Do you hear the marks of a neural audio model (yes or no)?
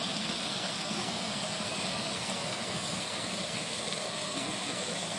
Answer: yes